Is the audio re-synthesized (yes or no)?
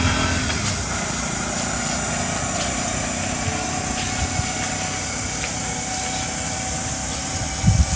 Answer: no